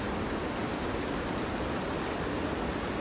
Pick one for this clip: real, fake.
real